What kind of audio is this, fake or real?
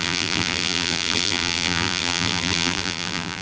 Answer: fake